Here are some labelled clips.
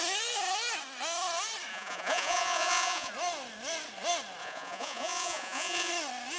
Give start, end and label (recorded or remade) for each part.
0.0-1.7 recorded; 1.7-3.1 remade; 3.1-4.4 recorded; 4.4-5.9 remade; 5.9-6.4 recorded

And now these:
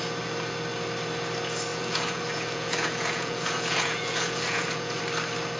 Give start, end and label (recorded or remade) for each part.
0.0-1.7 recorded; 1.7-5.0 remade; 5.0-5.6 recorded